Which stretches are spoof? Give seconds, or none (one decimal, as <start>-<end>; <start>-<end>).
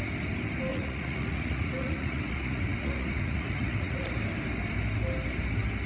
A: 0.7-4.2